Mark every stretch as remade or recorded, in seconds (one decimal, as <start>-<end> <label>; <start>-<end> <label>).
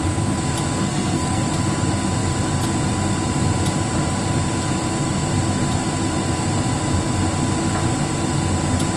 0.0-0.8 recorded; 0.8-1.4 remade; 1.4-9.0 recorded